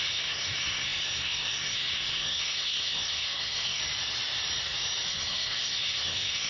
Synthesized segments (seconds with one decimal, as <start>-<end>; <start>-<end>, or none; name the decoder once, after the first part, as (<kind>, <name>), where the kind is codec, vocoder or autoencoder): 0.0-3.8 (codec, SNAC); 5.1-6.5